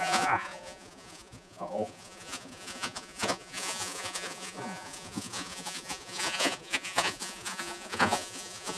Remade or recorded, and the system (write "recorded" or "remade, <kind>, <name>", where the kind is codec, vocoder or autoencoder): remade, vocoder, Vocos